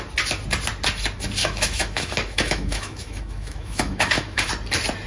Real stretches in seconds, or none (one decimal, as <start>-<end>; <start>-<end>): 0.0-1.4; 4.5-5.1